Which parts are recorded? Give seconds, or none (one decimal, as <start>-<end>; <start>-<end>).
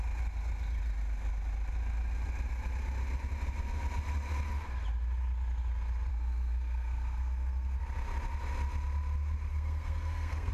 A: 0.0-6.1; 7.8-9.5